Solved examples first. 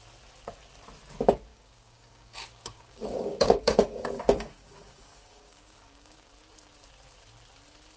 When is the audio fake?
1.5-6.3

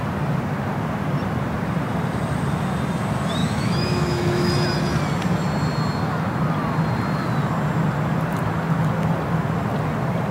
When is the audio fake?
3.4-4.5